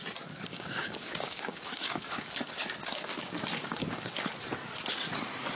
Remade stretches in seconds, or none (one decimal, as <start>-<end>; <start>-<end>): 0.5-2.3; 2.8-4.1